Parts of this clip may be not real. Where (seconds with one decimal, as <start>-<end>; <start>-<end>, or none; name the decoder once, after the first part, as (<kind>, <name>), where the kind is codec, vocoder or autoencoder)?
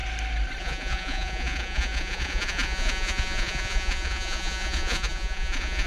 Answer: 0.6-5.9 (vocoder, Vocos)